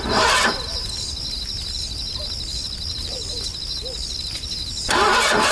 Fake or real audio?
real